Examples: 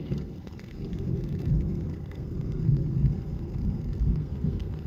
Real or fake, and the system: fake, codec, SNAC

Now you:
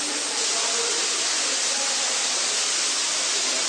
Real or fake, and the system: real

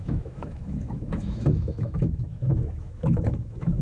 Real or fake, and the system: fake, autoencoder, DAC-VAE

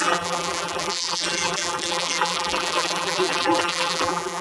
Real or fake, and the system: fake, vocoder, BigVGAN v2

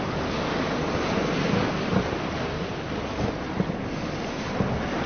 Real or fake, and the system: real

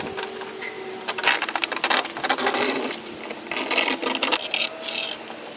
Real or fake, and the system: real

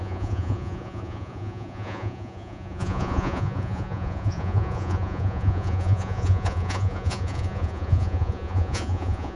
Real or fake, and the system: fake, vocoder, Vocos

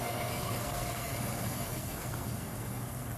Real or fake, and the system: fake, codec, SNAC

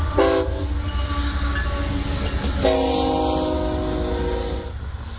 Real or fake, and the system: real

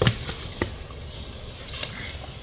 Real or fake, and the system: real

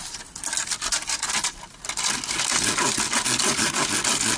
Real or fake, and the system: real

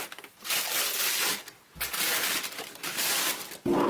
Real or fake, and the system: real